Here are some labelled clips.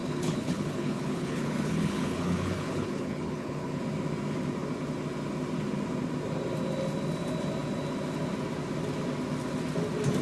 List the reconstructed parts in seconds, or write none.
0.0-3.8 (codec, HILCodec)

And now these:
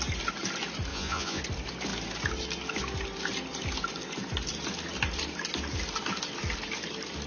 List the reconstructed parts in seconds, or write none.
0.9-1.4 (vocoder, Vocos)

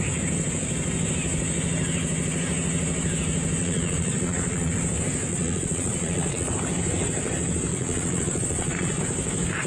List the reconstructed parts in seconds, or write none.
3.6-4.7 (vocoder, Vocos); 5.3-6.5; 7.7-9.0